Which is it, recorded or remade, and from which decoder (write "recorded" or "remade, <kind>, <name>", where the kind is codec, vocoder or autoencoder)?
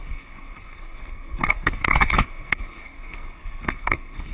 remade, codec, SNAC